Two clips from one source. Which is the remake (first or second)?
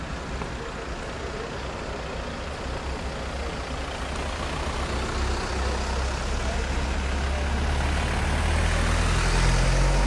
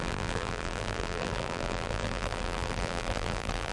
second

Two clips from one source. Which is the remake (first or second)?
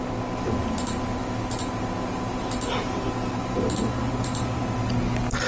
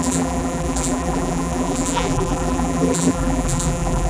second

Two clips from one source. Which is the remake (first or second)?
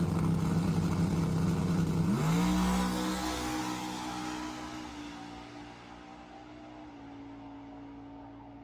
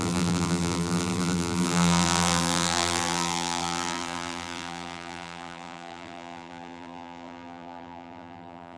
second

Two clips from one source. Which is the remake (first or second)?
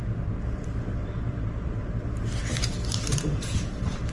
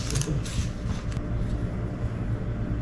first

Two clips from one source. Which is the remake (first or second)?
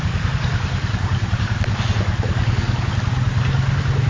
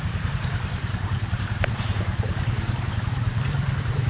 second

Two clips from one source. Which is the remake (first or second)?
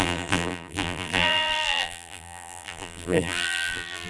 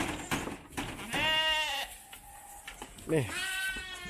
first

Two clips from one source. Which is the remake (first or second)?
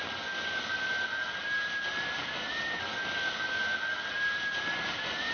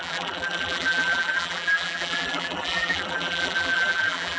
second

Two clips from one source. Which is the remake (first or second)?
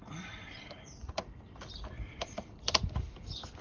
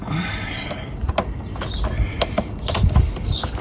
first